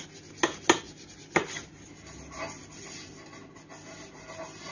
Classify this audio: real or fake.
real